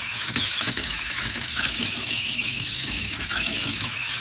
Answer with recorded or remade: remade